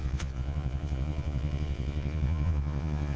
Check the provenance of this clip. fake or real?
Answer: fake